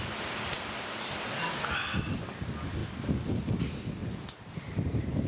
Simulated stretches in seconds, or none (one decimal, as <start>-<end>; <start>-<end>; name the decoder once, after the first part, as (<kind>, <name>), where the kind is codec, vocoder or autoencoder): none